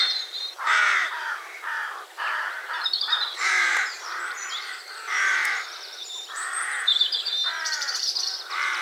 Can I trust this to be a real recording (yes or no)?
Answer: no